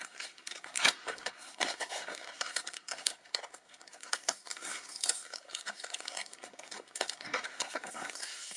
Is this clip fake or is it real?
fake